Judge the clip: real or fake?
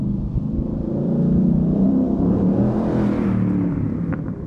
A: fake